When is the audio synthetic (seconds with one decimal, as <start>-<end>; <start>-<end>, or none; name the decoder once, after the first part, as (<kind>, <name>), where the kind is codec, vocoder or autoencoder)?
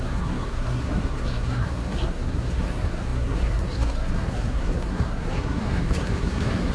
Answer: 0.0-6.7 (codec, SNAC)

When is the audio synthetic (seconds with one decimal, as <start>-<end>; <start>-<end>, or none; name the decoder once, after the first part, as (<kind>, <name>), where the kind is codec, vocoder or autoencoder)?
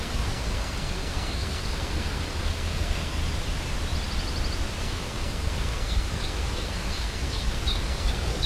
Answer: 0.0-3.2 (codec, SNAC); 4.8-8.5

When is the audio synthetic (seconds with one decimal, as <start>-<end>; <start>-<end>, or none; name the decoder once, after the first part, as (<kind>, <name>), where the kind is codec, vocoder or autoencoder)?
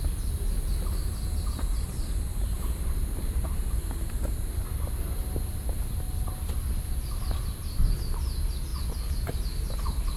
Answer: none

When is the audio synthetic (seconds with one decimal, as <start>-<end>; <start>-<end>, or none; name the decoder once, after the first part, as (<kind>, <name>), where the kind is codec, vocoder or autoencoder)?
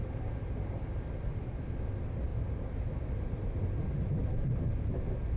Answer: none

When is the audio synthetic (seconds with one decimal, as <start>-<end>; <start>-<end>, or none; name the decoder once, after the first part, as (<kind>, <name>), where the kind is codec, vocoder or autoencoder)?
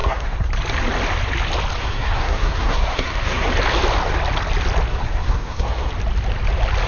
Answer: 0.0-0.5 (codec, SNAC); 1.8-3.5; 4.9-5.9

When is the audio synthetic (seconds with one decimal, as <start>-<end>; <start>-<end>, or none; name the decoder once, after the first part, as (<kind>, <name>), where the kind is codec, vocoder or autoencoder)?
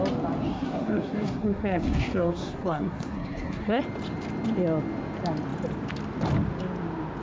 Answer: 0.5-3.8 (codec, SNAC)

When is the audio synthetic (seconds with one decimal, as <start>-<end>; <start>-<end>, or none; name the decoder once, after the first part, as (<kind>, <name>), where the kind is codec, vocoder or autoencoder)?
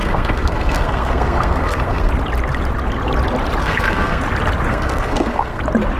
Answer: 0.0-2.1 (codec, SNAC); 3.6-4.2; 4.7-5.6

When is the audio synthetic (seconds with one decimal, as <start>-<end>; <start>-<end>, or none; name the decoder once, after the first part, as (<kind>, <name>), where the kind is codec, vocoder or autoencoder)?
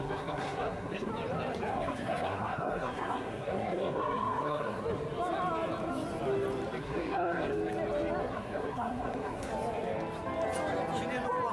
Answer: 0.0-1.1 (codec, SNAC); 1.7-4.8; 6.8-7.5; 8.2-9.5